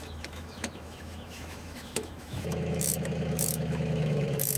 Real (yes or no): no